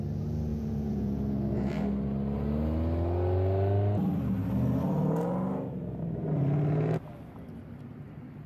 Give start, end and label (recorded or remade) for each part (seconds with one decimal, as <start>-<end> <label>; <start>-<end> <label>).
0.0-0.5 recorded; 0.5-1.7 remade; 1.7-8.5 recorded